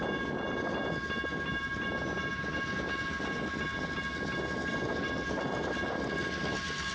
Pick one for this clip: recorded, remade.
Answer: recorded